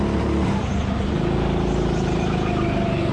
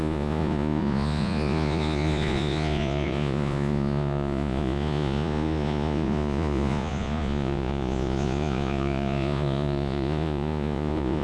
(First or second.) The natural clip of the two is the first